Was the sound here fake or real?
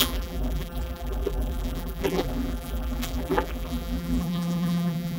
fake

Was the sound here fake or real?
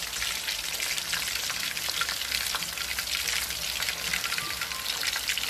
real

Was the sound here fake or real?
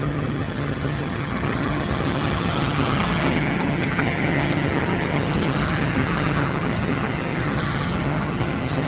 fake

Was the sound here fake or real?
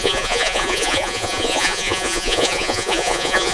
fake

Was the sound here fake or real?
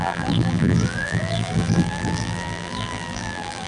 fake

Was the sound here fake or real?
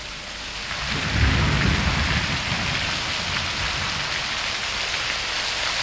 real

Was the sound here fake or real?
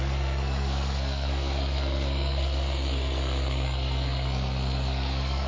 fake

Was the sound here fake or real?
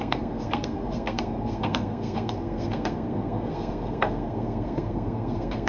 fake